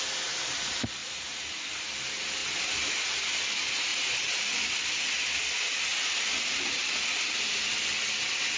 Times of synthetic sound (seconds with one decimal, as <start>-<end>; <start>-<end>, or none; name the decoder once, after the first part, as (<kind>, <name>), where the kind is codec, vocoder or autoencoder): 1.0-1.6 (vocoder, BigVGAN v2); 2.4-2.9; 3.9-4.5; 5.9-7.1